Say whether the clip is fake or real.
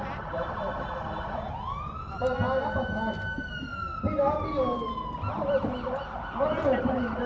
real